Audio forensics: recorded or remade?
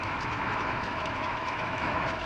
remade